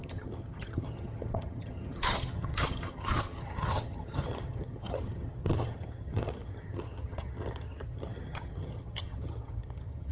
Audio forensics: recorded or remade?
remade